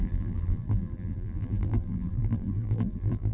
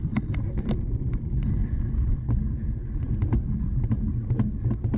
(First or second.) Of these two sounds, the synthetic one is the first